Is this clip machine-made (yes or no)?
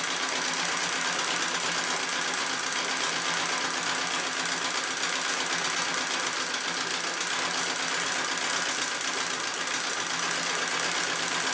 no